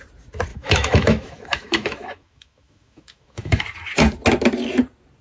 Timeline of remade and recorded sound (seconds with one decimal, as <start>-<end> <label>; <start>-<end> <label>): 0.0-0.5 recorded; 0.5-3.6 remade; 3.6-5.2 recorded